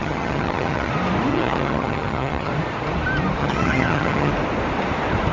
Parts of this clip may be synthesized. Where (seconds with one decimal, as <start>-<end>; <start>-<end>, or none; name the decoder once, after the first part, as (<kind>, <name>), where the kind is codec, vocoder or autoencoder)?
0.0-0.9 (vocoder, HiFi-GAN); 1.3-2.5; 3.4-4.3